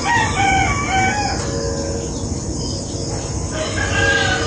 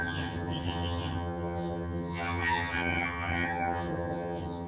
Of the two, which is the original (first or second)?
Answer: first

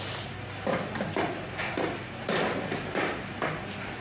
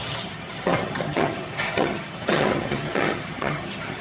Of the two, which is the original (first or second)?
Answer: first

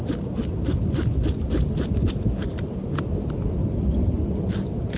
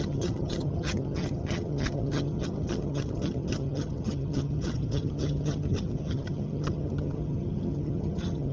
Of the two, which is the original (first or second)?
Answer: first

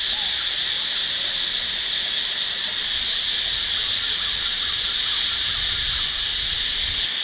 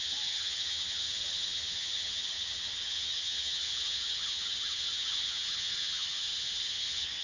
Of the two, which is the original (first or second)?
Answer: first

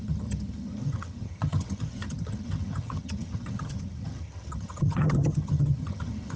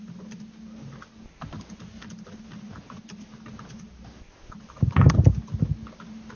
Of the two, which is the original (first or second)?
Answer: second